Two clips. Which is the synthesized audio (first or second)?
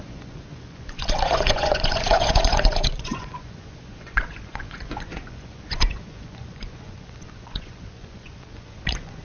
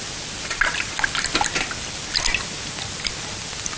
first